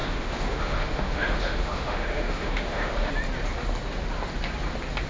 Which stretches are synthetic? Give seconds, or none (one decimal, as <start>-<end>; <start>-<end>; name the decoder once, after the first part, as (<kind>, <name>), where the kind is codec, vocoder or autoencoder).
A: 0.0-3.1 (autoencoder, DAC-VAE)